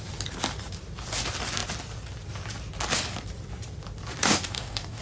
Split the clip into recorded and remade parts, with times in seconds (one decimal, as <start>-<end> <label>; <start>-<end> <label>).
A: 0.0-4.2 recorded; 4.2-5.0 remade